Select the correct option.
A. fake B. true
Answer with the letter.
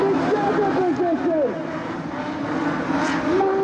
B